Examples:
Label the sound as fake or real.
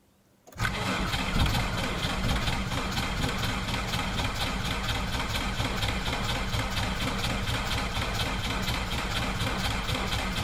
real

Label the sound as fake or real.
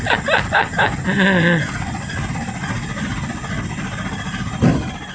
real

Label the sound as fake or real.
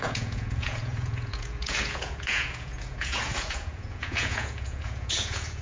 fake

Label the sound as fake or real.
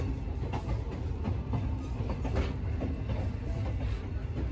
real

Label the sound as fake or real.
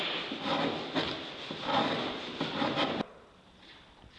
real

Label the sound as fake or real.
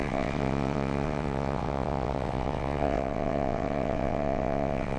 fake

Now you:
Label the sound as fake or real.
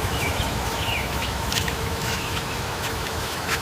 fake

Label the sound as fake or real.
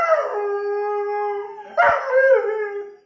real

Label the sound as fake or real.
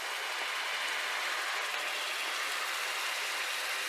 real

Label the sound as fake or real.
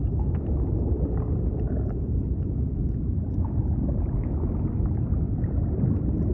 real